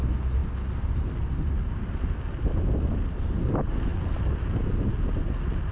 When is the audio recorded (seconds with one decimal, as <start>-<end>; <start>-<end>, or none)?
0.0-5.7